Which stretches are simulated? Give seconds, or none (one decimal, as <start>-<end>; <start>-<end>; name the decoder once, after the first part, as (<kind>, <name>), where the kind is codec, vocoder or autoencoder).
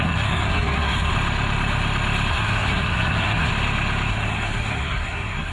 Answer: 0.0-1.1 (codec, SNAC); 2.3-3.5; 4.1-5.5